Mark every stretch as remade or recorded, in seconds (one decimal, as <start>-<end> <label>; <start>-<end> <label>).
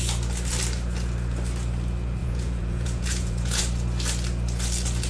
0.0-2.2 recorded; 2.2-3.6 remade; 3.6-5.1 recorded